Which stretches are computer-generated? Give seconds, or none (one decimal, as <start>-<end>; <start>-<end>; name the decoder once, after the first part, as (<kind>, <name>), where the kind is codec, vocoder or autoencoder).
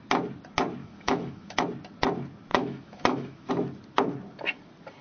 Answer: 0.8-1.6 (autoencoder, DAC-VAE); 2.5-3.5